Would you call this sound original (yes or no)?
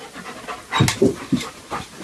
yes